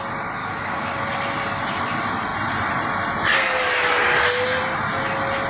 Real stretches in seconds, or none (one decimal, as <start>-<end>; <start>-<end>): 0.0-0.4; 1.0-5.5